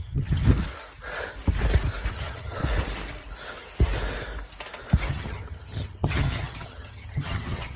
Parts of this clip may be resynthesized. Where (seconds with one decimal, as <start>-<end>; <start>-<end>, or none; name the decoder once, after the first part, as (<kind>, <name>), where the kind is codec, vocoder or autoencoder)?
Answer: 0.0-0.4 (vocoder, HiFi-GAN); 2.1-2.6; 5.1-7.8